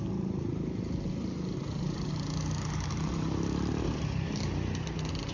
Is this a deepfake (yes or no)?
no